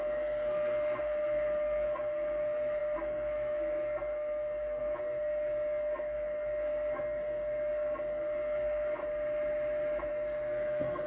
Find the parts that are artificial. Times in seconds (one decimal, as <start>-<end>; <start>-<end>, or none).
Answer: 0.0-9.0; 10.1-11.1